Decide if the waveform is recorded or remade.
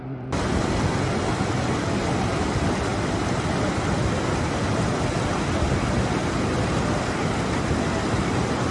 recorded